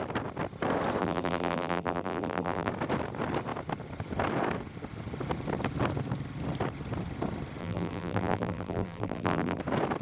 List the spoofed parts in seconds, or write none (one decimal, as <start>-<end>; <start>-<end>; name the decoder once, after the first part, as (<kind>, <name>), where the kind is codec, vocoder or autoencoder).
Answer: 1.0-2.7 (vocoder, BigVGAN v2); 7.6-9.6